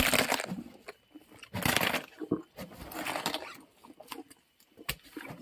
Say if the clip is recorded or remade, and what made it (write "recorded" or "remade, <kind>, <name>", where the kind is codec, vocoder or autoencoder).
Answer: recorded